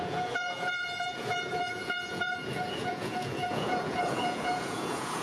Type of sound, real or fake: fake